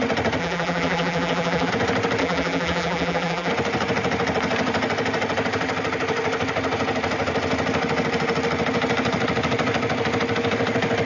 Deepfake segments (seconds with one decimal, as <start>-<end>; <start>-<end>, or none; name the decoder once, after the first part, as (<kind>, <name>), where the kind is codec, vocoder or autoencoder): 0.4-1.7 (vocoder, BigVGAN v2); 2.2-3.5